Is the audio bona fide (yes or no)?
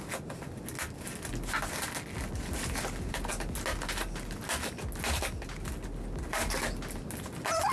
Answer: yes